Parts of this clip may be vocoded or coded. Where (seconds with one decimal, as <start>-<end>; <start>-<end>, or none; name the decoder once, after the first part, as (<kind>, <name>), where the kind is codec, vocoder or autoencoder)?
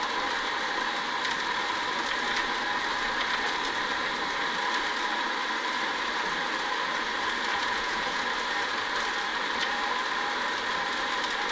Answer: 7.5-8.2 (vocoder, Vocos)